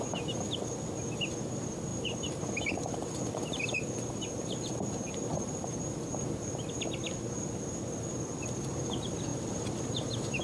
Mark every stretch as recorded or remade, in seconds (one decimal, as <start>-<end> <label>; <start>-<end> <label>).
0.0-1.9 recorded; 1.9-6.7 remade; 6.7-9.3 recorded; 9.3-10.4 remade